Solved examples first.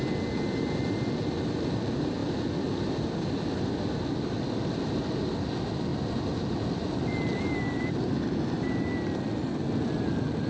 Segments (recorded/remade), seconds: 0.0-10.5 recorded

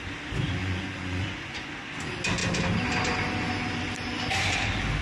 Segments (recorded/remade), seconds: 0.0-0.6 recorded; 0.6-1.7 remade; 1.7-5.0 recorded

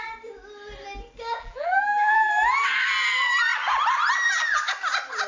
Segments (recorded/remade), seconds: 0.0-1.4 recorded; 1.4-2.3 remade; 2.3-5.3 recorded

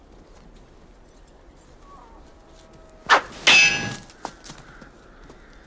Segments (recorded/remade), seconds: 0.0-5.7 recorded

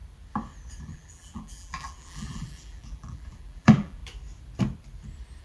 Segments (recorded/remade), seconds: 0.0-0.8 recorded; 0.8-4.0 remade; 4.0-5.4 recorded

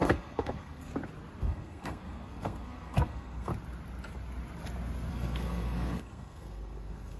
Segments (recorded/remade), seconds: 0.0-0.9 remade; 0.9-1.4 recorded; 1.4-3.5 remade; 3.5-5.1 recorded; 5.1-7.2 remade